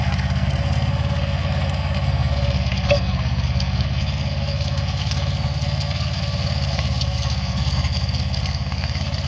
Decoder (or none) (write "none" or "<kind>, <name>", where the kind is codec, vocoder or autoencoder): codec, SNAC